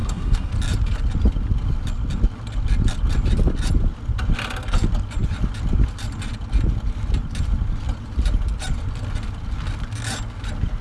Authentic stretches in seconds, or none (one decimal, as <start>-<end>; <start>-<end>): 0.5-10.8